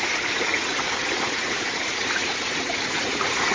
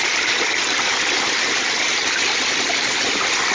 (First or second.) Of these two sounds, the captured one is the second